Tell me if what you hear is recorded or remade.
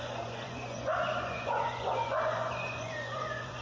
remade